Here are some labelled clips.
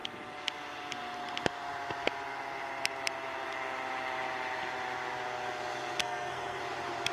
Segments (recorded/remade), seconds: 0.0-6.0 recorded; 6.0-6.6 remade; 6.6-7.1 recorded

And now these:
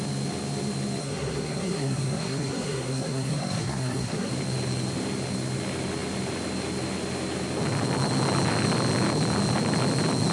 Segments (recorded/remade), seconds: 0.0-1.0 recorded; 1.0-4.3 remade; 4.3-10.3 recorded

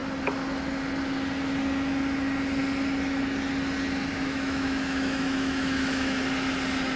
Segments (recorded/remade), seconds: 0.0-4.1 recorded; 4.1-6.2 remade; 6.2-7.0 recorded

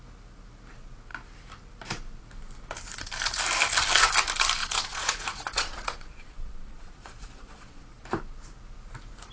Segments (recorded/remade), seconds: 0.0-4.6 recorded; 4.6-8.0 remade; 8.0-9.3 recorded